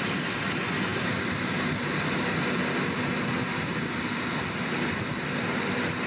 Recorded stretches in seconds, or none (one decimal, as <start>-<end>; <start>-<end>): 0.0-6.1

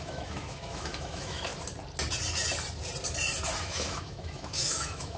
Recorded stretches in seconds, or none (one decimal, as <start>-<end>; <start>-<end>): 1.5-3.6

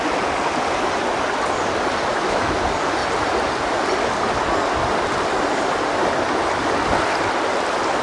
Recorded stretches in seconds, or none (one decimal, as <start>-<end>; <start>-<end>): 0.0-2.1; 2.6-8.0